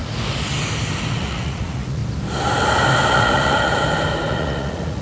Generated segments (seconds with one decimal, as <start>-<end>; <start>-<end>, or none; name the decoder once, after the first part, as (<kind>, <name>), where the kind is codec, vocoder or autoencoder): 1.1-2.0 (vocoder, Vocos); 3.1-3.7; 4.3-5.0